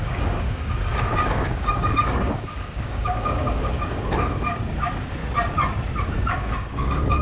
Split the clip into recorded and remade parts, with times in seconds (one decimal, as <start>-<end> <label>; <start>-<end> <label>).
0.0-5.2 remade; 5.2-6.3 recorded; 6.3-7.2 remade